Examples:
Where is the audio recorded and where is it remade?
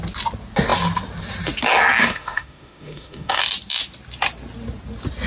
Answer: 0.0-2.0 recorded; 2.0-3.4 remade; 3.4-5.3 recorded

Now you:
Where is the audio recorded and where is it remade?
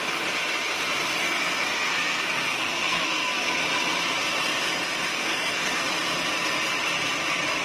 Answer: 0.0-1.2 recorded; 1.2-3.6 remade; 3.6-5.1 recorded; 5.1-5.9 remade; 5.9-7.6 recorded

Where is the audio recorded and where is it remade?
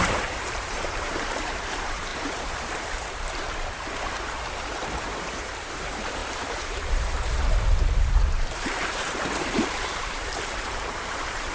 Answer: 0.0-11.5 remade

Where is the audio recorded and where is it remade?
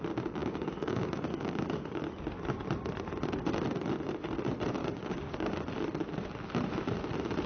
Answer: 0.0-0.4 recorded; 0.4-2.0 remade; 2.0-4.8 recorded; 4.8-5.6 remade; 5.6-7.5 recorded